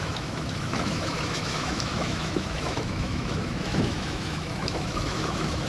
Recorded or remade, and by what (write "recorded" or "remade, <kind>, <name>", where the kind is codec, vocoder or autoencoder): remade, autoencoder, DAC-VAE